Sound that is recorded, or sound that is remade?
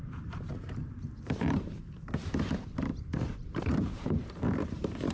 remade